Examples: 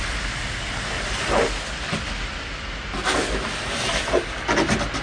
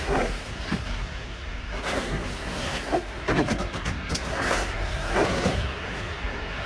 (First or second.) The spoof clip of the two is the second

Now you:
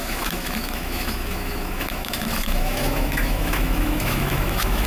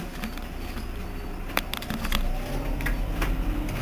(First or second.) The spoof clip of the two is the first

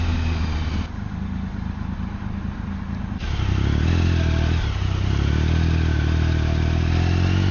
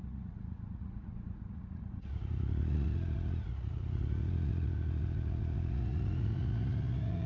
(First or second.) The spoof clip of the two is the second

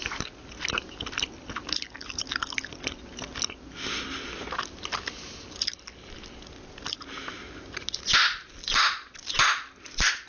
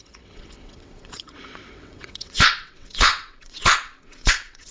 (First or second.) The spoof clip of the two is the second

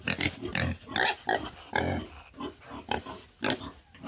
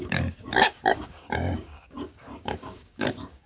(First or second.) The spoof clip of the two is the second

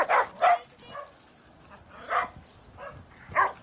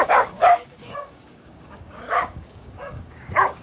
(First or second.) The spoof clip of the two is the second